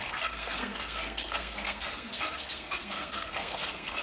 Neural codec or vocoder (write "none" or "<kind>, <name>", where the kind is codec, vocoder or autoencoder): codec, SNAC